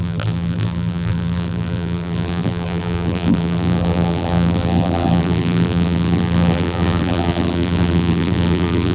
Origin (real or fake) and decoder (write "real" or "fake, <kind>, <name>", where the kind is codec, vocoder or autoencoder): fake, vocoder, BigVGAN v2